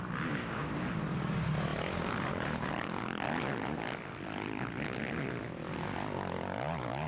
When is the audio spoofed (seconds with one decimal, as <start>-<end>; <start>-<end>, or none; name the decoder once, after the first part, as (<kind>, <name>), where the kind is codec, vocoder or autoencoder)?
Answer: 1.7-2.7 (vocoder, BigVGAN v2)